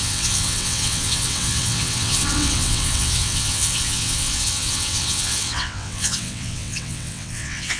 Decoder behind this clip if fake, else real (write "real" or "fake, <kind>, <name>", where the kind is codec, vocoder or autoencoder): fake, vocoder, WaveNeXt